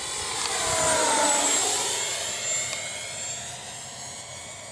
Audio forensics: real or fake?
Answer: real